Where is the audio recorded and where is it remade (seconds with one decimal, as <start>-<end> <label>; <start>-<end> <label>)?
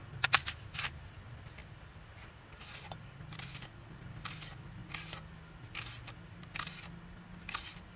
0.0-8.0 recorded